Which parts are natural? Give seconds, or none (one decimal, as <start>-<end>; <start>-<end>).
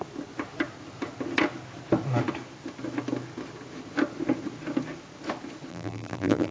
0.0-5.7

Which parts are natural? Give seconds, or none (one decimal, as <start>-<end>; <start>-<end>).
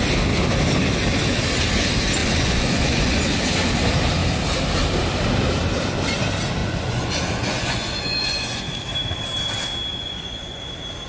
0.0-2.2; 3.2-6.6; 8.6-9.9; 10.6-11.1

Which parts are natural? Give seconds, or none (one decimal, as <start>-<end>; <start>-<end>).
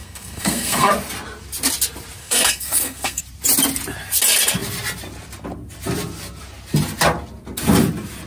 0.9-2.2; 3.2-8.3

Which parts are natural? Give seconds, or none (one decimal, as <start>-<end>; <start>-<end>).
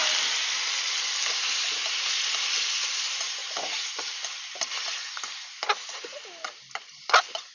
0.0-3.4; 4.1-7.5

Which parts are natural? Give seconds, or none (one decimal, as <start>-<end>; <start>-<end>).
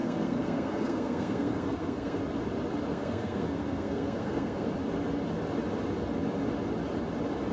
2.2-2.9; 4.7-7.5